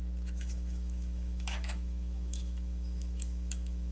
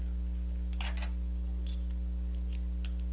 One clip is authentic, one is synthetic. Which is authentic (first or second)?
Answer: second